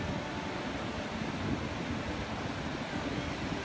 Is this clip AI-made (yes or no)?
no